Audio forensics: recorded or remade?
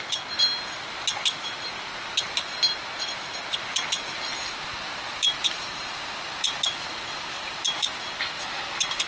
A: recorded